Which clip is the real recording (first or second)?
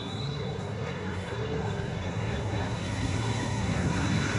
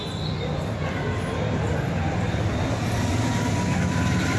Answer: second